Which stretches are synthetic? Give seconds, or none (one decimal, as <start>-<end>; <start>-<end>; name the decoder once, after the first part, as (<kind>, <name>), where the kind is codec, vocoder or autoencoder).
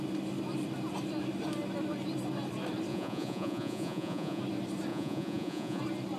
2.9-4.4 (vocoder, Vocos); 4.9-5.8